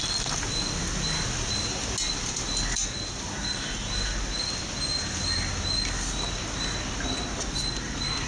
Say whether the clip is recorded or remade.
recorded